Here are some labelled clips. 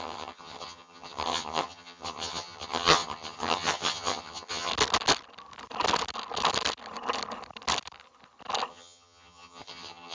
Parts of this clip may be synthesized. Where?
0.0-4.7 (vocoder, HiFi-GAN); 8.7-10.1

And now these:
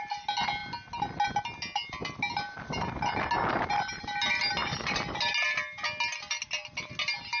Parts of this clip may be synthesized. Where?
none

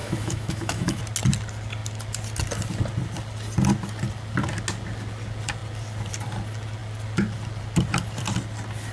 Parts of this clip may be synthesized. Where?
0.0-1.0 (autoencoder, DAC-VAE)

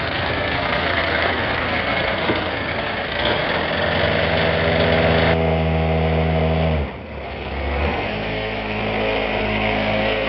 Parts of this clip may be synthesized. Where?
0.0-3.4 (codec, SNAC); 7.0-8.8; 9.4-10.3

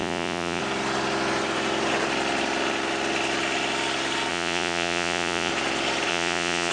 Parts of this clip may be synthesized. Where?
0.0-0.6 (vocoder, Vocos); 4.3-5.5; 6.1-6.7

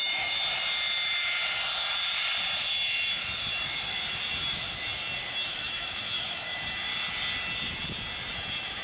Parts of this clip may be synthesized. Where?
0.0-0.4 (autoencoder, DAC-VAE); 5.3-6.9; 8.3-8.8

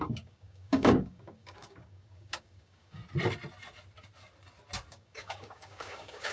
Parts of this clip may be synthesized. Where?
0.0-3.0 (codec, DAC); 4.9-6.3

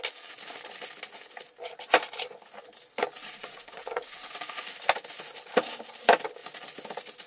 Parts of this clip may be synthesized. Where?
3.2-4.3 (vocoder, Vocos)